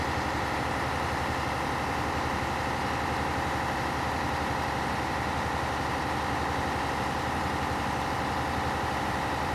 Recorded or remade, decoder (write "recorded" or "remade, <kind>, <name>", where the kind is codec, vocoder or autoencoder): recorded